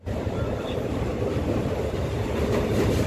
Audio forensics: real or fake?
fake